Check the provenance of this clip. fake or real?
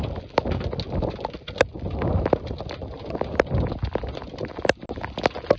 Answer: real